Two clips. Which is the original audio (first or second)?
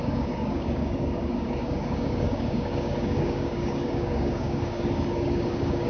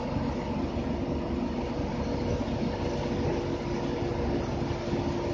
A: second